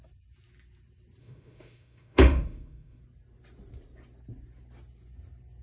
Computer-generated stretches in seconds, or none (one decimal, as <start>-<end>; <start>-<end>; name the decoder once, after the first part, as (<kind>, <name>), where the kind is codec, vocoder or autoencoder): 1.2-3.0 (autoencoder, DAC-VAE)